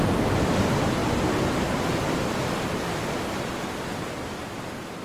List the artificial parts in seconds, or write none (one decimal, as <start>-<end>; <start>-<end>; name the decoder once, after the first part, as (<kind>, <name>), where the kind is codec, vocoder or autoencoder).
none